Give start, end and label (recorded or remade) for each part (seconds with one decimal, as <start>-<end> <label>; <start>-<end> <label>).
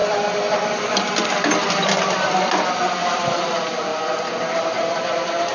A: 0.0-5.5 recorded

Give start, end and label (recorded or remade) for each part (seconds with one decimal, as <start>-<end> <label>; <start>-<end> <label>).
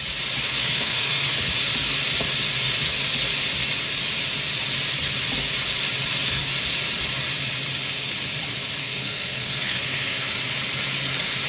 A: 0.0-0.6 recorded; 0.6-1.3 remade; 1.3-8.8 recorded; 8.8-10.2 remade; 10.2-11.5 recorded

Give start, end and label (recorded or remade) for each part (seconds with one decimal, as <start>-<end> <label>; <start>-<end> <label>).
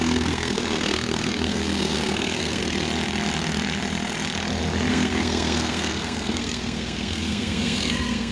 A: 0.0-2.6 remade; 2.6-4.9 recorded; 4.9-8.3 remade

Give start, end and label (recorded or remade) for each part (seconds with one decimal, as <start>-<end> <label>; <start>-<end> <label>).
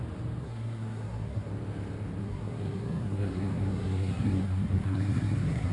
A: 0.0-0.4 recorded; 0.4-1.5 remade; 1.5-2.2 recorded; 2.2-5.7 remade